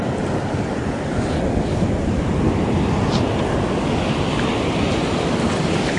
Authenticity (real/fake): real